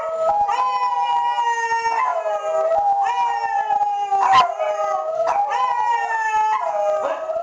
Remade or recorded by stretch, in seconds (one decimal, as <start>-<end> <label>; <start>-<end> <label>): 0.0-7.4 recorded

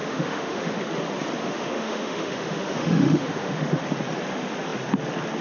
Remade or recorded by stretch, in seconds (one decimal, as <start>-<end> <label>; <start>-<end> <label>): 0.0-0.8 remade; 0.8-1.4 recorded; 1.4-3.8 remade; 3.8-5.4 recorded

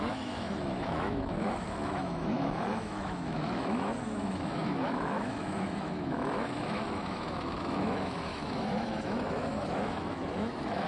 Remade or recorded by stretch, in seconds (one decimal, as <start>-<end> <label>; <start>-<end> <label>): 0.0-10.9 remade

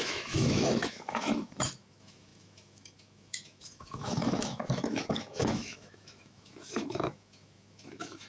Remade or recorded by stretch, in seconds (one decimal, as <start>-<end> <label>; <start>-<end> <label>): 0.0-8.3 remade

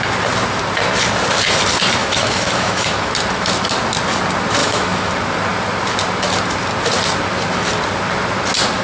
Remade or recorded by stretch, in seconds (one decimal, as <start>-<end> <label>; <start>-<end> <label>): 0.0-2.0 recorded; 2.0-3.1 remade; 3.1-4.6 recorded; 4.6-5.1 remade; 5.1-8.8 recorded

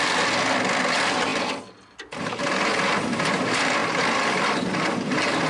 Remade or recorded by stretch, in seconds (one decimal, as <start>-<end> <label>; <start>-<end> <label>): 0.0-5.5 recorded